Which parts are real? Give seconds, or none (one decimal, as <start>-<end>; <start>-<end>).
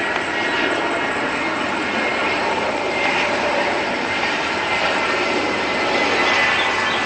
0.0-2.1; 5.9-7.1